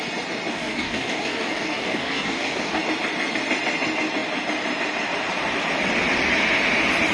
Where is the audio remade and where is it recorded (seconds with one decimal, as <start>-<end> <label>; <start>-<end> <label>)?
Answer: 0.0-0.5 recorded; 0.5-2.8 remade; 2.8-7.1 recorded

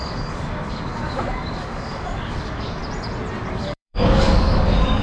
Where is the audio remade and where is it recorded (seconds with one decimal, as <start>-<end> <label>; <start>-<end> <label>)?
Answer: 0.0-2.8 remade; 2.8-3.5 recorded; 3.5-5.0 remade

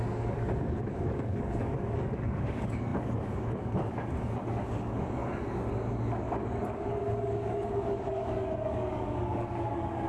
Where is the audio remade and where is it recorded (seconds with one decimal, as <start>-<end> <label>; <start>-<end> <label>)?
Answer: 0.0-10.1 remade

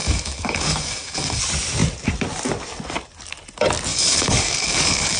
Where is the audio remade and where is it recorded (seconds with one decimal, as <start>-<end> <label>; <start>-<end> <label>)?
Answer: 0.0-1.4 remade; 1.4-3.9 recorded; 3.9-5.2 remade

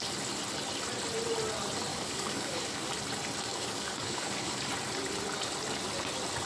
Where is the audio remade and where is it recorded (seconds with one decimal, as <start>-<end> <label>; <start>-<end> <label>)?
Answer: 0.0-1.9 recorded; 1.9-2.9 remade; 2.9-3.5 recorded; 3.5-4.6 remade; 4.6-6.5 recorded

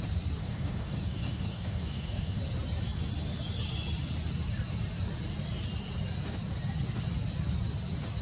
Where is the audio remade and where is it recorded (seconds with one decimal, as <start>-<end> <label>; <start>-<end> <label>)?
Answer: 0.0-0.4 recorded; 0.4-2.4 remade; 2.4-8.2 recorded

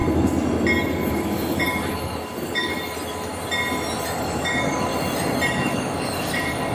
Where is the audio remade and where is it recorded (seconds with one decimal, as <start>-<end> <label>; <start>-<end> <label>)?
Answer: 0.0-1.1 recorded; 1.1-2.7 remade; 2.7-4.2 recorded; 4.2-4.9 remade; 4.9-5.5 recorded; 5.5-6.7 remade

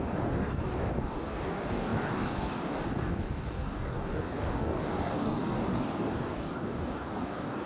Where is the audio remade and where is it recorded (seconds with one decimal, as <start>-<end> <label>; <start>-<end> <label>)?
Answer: 0.0-7.7 remade